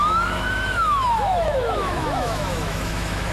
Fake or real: fake